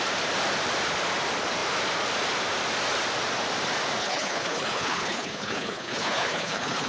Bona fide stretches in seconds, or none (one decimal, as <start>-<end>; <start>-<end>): 0.0-4.0